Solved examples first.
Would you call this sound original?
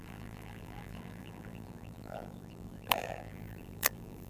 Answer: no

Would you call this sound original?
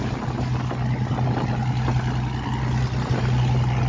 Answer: yes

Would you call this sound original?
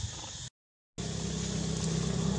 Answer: yes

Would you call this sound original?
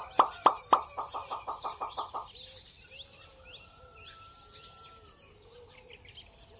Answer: yes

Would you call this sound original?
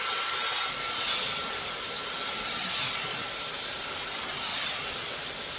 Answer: no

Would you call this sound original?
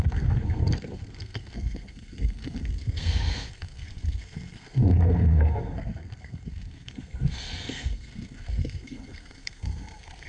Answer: no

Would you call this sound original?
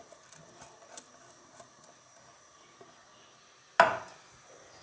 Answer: yes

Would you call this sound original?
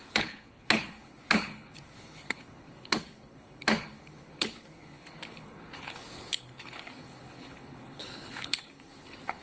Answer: no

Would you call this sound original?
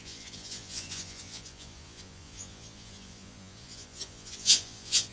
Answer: no